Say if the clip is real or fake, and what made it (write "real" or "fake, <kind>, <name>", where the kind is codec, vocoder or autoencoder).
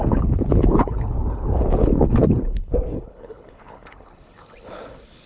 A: fake, codec, HILCodec